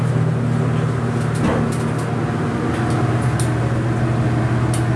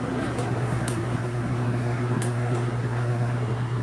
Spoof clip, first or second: second